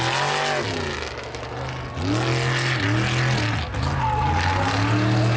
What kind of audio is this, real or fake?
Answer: real